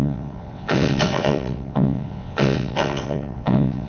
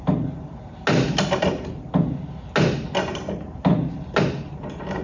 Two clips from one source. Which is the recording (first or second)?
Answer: second